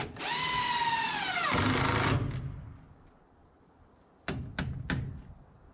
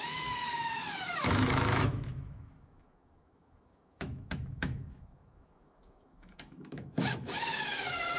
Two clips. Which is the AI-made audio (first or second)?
second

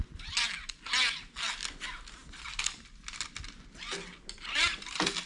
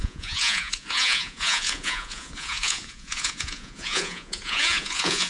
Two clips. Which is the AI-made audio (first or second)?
second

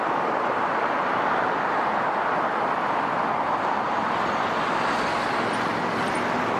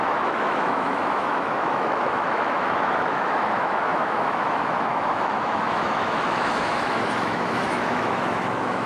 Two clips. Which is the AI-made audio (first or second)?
second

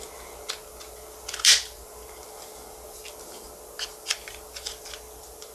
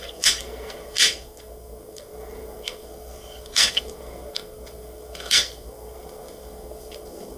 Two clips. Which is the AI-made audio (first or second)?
second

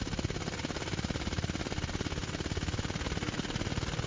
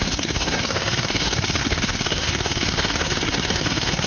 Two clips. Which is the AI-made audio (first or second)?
second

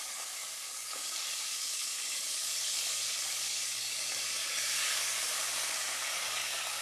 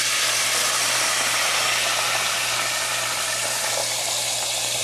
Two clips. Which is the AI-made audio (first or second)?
first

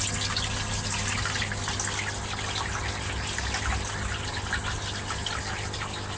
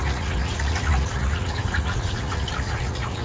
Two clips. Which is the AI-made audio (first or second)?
second